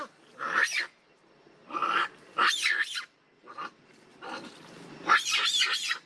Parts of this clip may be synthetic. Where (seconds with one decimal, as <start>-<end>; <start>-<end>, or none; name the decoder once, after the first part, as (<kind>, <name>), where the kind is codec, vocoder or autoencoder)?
none